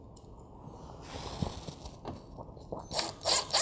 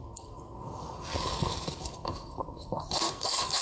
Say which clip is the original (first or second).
first